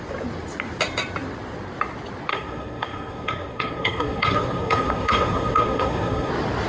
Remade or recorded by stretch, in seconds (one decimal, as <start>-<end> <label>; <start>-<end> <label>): 0.0-2.3 recorded; 2.3-6.3 remade; 6.3-6.7 recorded